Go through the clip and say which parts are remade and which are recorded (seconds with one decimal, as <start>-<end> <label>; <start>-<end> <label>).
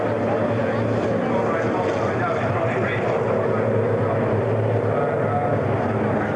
0.0-6.4 recorded